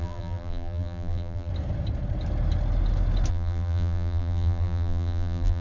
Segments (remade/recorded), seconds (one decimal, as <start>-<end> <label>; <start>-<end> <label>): 0.0-1.5 remade; 1.5-3.3 recorded; 3.3-5.6 remade